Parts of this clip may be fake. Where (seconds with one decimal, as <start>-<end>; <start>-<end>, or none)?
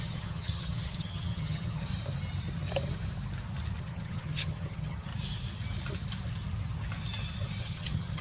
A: 0.0-1.9; 3.8-5.1; 7.6-8.2